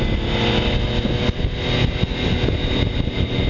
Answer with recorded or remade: recorded